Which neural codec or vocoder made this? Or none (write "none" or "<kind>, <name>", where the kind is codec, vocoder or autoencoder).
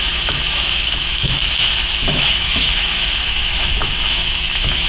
autoencoder, DAC-VAE